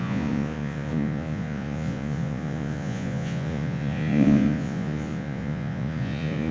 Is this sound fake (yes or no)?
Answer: yes